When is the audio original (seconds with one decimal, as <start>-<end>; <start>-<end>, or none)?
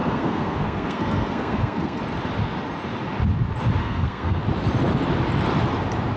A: 2.0-3.8; 4.4-6.2